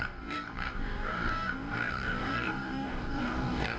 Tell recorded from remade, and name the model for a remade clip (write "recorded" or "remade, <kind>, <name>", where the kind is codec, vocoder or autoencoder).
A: remade, codec, DAC